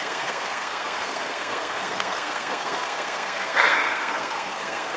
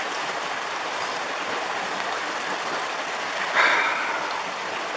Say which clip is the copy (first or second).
first